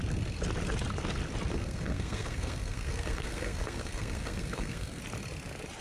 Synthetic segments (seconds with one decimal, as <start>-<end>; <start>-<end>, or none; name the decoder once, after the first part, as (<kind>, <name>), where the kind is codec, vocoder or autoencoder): 1.5-5.0 (codec, SNAC)

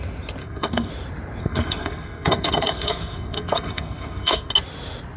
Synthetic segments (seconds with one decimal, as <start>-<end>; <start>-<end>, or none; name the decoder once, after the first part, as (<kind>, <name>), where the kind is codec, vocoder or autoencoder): 0.4-0.9 (codec, SNAC); 1.4-4.5

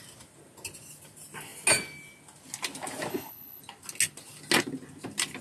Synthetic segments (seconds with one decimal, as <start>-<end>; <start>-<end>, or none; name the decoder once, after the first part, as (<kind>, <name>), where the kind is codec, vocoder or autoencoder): 3.1-3.6 (codec, HILCodec)

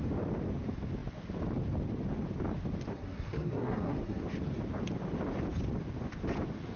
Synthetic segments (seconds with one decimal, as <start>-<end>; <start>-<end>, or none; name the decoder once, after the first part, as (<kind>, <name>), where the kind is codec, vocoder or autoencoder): 2.9-4.2 (codec, SNAC)